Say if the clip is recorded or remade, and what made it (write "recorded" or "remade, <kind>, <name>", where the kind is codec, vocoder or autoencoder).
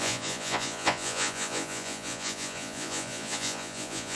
remade, vocoder, Vocos